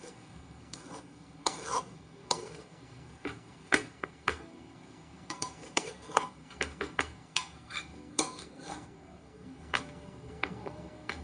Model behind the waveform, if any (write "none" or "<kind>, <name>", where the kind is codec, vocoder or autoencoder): codec, SNAC